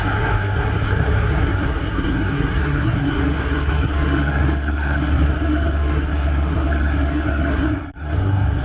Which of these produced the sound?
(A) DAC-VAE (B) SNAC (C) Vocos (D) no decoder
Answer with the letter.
B